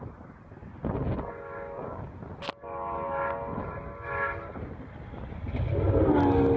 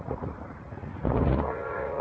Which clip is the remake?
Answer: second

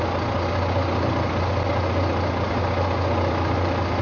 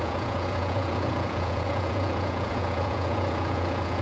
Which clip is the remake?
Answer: second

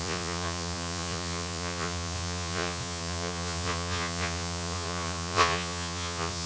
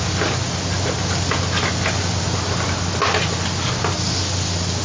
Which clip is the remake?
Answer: first